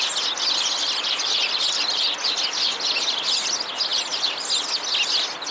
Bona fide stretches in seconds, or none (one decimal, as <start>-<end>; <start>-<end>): 0.0-5.5